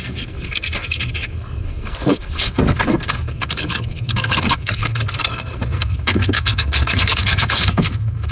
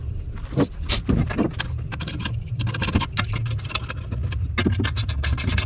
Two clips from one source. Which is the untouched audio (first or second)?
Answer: second